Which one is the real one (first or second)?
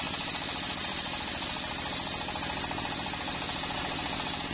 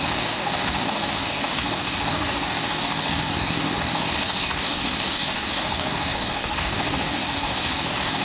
first